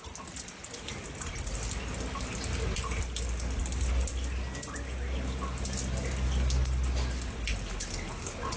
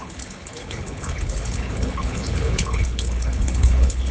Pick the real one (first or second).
first